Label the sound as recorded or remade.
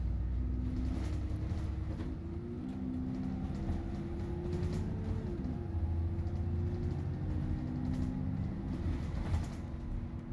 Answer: recorded